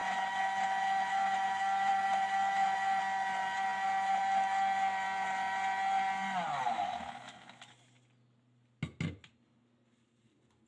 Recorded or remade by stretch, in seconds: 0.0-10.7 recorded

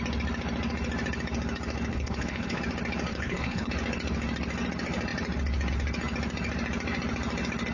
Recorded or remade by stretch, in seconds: 0.0-1.9 recorded; 1.9-2.6 remade; 2.6-3.1 recorded; 3.1-3.7 remade; 3.7-7.7 recorded

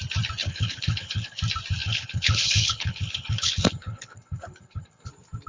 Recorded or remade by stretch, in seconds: 0.0-0.4 recorded; 0.4-1.4 remade; 1.4-1.8 recorded; 1.8-5.1 remade; 5.1-5.5 recorded

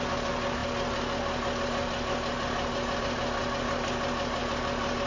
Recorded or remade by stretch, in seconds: 0.0-5.1 recorded

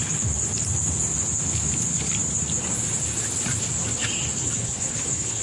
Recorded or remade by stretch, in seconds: 0.0-4.4 recorded; 4.4-5.4 remade

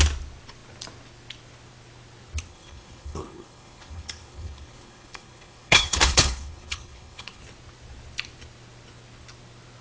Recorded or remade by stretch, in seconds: 0.0-2.5 recorded; 2.5-7.4 remade; 7.4-9.8 recorded

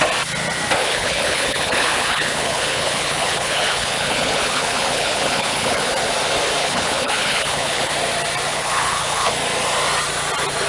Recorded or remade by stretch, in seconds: 0.0-0.8 recorded; 0.8-5.9 remade; 5.9-6.6 recorded; 6.6-7.9 remade; 7.9-8.5 recorded; 8.5-9.3 remade; 9.3-10.7 recorded